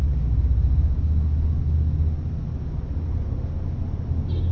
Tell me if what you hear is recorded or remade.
recorded